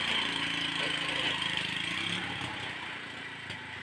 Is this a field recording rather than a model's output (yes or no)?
no